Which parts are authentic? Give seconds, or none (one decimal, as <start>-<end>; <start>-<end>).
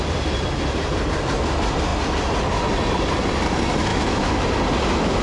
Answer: 0.0-3.9; 4.4-5.2